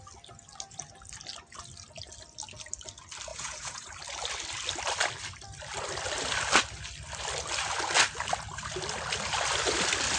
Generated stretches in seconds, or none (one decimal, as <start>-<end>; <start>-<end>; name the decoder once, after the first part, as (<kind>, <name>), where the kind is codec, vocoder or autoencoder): 3.3-3.9 (vocoder, Vocos)